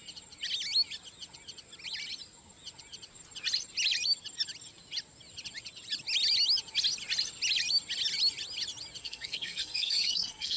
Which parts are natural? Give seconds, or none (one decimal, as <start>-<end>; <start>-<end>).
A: 0.0-9.0